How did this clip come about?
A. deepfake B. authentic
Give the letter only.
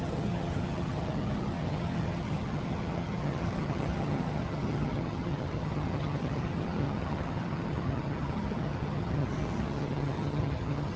A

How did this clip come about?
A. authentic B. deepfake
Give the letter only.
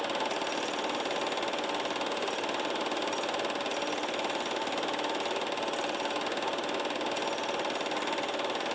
A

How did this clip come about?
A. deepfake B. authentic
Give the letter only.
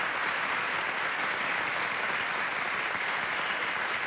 B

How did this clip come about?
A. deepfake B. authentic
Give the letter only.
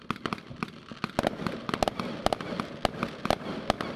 B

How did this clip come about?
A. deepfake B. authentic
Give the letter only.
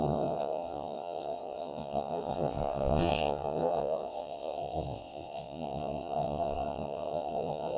A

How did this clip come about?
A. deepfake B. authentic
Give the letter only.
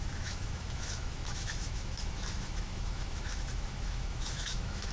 A